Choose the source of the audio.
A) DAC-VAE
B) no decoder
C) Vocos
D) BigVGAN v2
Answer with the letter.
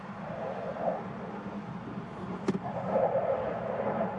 B